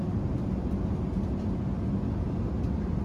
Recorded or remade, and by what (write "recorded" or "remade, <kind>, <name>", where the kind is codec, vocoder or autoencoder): recorded